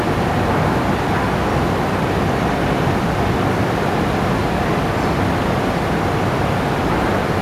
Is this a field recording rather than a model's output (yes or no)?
yes